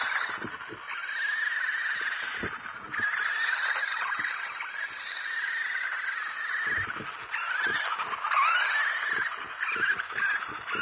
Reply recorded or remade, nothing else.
recorded